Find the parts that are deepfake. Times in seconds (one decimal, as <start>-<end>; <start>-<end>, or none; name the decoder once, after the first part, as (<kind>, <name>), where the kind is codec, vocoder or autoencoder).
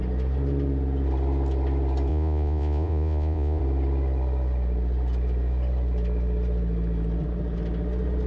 2.1-3.6 (vocoder, Vocos)